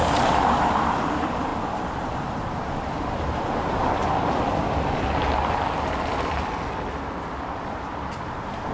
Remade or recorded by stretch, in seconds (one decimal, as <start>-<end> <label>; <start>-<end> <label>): 0.0-4.0 remade; 4.0-8.1 recorded; 8.1-8.7 remade